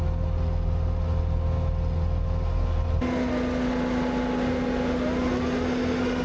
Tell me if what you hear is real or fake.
real